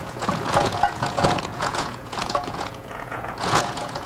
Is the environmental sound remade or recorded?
remade